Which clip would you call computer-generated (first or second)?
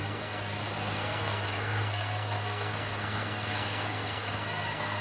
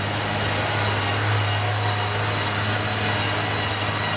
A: first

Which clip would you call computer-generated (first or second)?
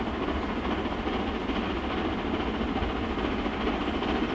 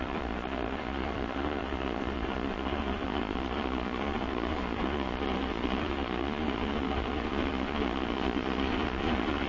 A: second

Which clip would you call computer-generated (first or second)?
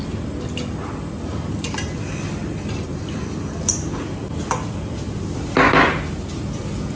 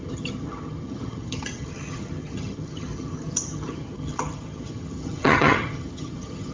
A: second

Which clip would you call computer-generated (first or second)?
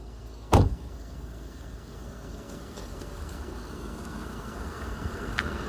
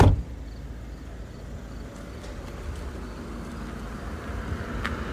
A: first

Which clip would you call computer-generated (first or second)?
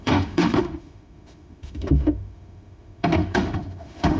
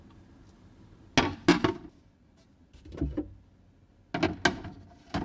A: first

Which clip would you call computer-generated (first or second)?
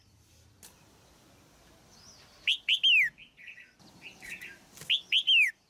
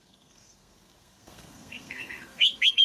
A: second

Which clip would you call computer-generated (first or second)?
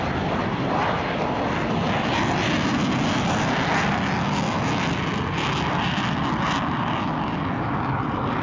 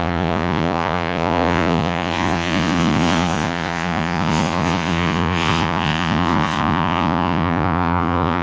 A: second